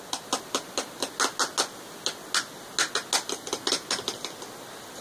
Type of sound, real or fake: real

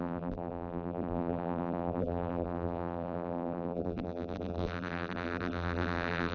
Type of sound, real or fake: fake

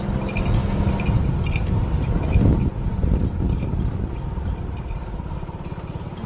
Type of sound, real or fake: real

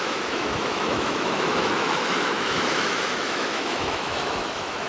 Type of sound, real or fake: fake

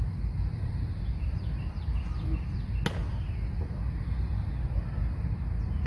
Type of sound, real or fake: real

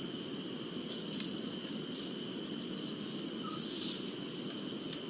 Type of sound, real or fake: real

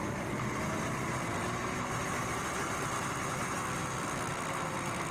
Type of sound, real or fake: real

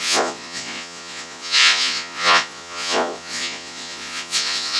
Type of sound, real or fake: fake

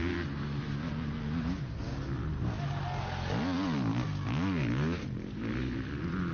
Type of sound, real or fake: real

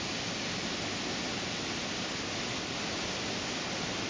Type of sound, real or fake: real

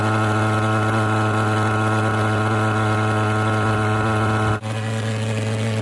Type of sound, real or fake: real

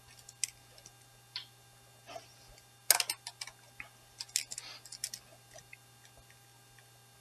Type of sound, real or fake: real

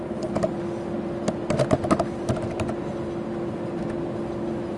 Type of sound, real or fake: real